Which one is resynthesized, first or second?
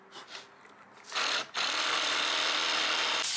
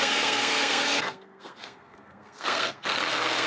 second